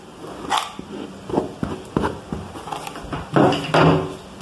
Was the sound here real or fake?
real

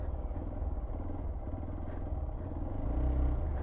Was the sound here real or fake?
real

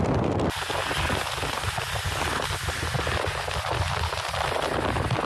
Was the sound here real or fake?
real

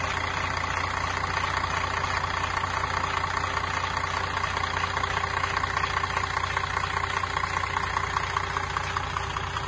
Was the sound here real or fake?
real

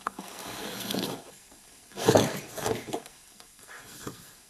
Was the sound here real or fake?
fake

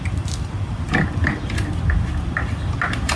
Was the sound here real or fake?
real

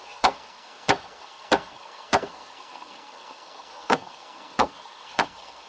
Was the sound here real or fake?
fake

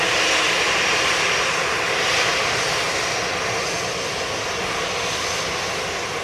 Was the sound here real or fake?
real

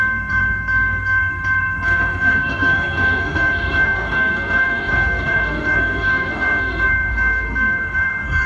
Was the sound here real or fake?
fake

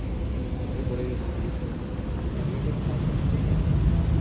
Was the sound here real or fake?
real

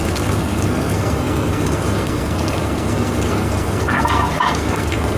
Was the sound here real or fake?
fake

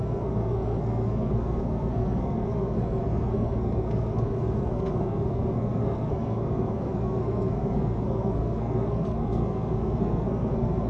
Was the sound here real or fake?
fake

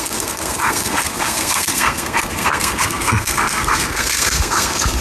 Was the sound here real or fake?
fake